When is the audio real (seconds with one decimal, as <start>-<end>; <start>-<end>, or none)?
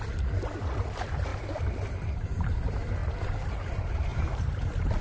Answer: 1.3-1.9; 3.0-3.5